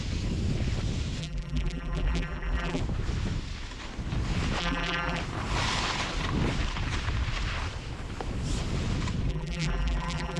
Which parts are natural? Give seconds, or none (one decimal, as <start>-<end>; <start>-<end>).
0.0-1.2; 2.8-4.6; 5.2-9.3